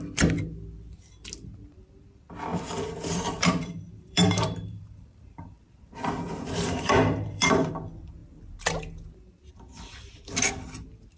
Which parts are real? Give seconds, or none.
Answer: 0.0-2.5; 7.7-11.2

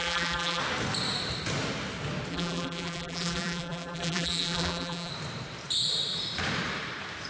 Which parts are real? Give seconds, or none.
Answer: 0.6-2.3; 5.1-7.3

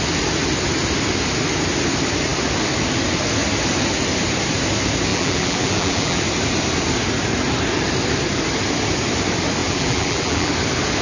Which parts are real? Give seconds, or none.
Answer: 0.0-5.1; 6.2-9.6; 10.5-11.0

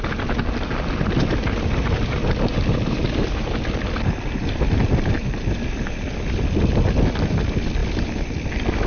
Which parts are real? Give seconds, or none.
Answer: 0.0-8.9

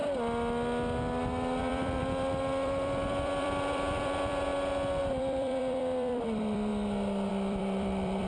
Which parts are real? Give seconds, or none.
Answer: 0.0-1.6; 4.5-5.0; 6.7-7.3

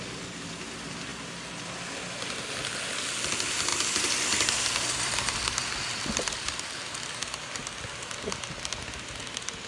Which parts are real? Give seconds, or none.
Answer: 0.0-3.7; 8.7-9.7